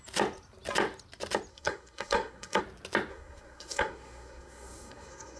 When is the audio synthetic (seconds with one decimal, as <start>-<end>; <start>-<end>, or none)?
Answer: 1.5-2.6; 3.1-5.4